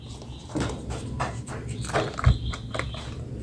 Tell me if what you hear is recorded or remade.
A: recorded